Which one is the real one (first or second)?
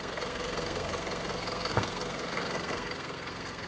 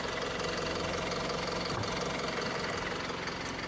second